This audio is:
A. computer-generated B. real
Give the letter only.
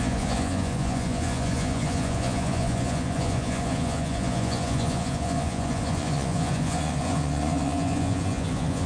A